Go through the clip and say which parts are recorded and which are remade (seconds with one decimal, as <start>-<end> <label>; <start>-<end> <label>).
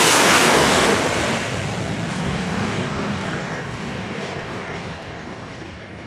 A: 0.0-0.9 remade; 0.9-2.1 recorded; 2.1-6.1 remade